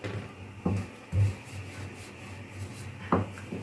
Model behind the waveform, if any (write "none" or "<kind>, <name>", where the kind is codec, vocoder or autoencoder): none